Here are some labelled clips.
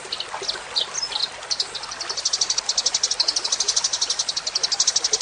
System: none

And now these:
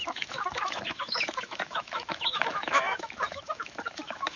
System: autoencoder, DAC-VAE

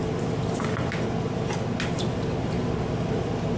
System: none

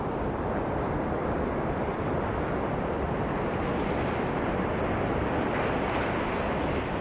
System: none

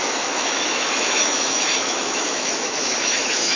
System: autoencoder, DAC-VAE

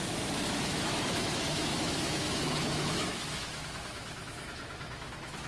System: autoencoder, DAC-VAE